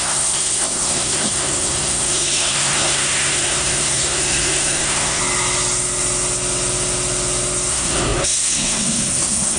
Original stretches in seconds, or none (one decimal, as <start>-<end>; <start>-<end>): 5.2-7.7